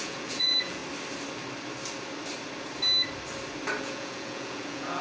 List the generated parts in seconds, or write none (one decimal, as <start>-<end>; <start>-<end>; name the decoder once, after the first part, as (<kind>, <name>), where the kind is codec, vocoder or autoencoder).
0.0-0.8 (vocoder, Vocos); 3.8-5.0